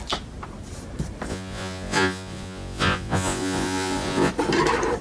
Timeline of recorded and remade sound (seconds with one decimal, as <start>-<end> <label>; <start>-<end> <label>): 0.0-1.3 recorded; 1.3-4.3 remade; 4.3-5.0 recorded